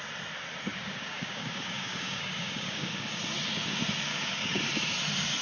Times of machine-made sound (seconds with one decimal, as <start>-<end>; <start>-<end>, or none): 0.7-3.2; 4.1-4.7